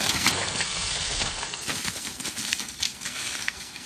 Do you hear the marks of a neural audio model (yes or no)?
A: yes